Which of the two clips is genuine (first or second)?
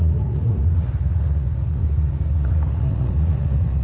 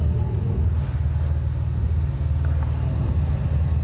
second